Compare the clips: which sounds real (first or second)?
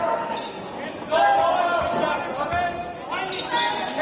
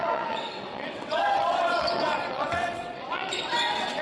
first